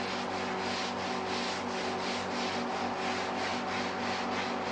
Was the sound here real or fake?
real